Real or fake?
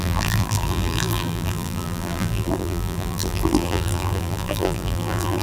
fake